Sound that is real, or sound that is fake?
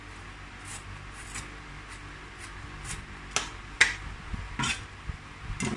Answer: real